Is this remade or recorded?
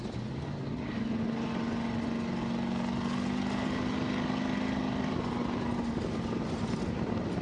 recorded